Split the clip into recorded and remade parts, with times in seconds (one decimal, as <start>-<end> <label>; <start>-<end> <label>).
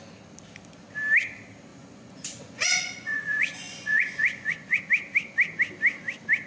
0.0-1.7 recorded; 1.7-4.8 remade; 4.8-6.5 recorded